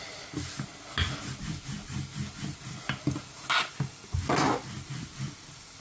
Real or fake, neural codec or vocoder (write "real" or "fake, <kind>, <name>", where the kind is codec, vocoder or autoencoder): real